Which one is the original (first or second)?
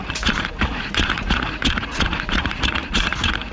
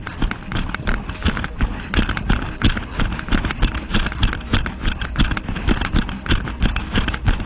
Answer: second